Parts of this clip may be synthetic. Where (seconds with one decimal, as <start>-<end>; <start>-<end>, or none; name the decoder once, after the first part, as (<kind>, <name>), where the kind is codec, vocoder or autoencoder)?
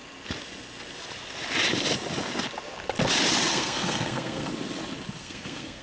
3.5-4.5 (codec, SNAC); 5.2-5.8